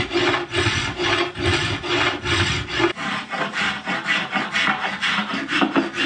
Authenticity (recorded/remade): recorded